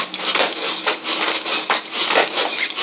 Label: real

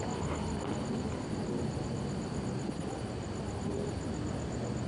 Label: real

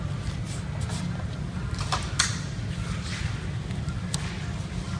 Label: real